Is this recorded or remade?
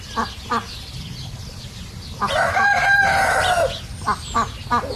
recorded